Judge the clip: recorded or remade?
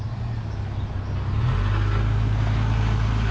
recorded